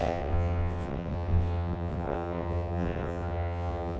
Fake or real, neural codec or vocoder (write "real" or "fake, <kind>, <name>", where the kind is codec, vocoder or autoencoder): fake, vocoder, WaveNeXt